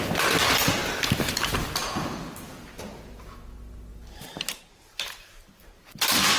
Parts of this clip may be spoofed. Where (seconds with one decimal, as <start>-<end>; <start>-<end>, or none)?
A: 3.9-6.4